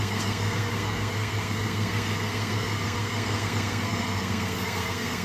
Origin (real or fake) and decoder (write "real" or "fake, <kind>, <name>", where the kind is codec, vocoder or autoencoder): fake, codec, SNAC